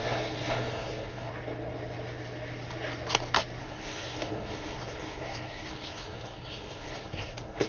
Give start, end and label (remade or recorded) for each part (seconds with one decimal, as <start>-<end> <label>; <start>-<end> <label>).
0.0-1.3 remade; 1.3-3.6 recorded; 3.6-7.7 remade